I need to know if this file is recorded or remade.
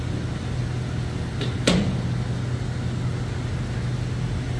recorded